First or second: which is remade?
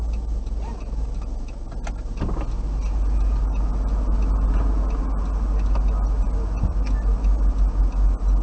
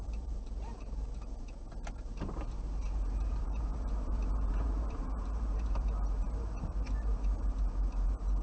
second